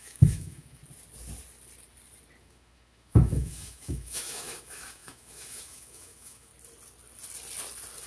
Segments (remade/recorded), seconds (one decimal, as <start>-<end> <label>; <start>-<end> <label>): 0.0-0.8 remade; 0.8-2.4 recorded; 2.4-6.5 remade; 6.5-8.1 recorded